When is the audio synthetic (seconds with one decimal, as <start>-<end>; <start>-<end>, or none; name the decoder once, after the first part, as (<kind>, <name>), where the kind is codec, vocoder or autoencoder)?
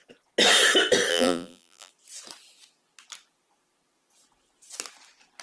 1.1-1.9 (vocoder, BigVGAN v2)